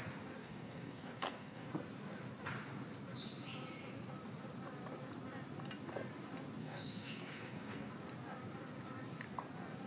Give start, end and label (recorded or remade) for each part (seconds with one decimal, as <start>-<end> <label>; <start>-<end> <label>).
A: 0.0-0.4 recorded; 0.4-1.7 remade; 1.7-6.6 recorded; 6.6-7.9 remade; 7.9-9.9 recorded